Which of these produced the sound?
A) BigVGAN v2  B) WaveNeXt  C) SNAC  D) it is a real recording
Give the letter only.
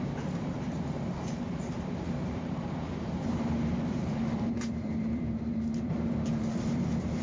A